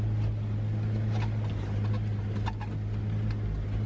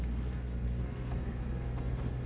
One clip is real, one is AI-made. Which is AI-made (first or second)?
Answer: second